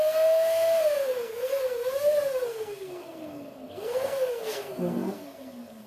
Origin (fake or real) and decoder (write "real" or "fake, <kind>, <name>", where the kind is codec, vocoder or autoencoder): fake, codec, SNAC